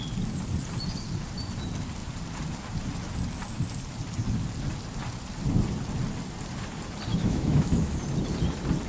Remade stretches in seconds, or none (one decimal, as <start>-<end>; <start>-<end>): 7.1-8.0